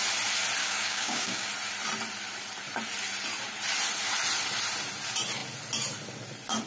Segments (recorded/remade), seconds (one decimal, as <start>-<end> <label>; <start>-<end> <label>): 0.0-0.6 recorded; 0.6-1.5 remade; 1.5-6.7 recorded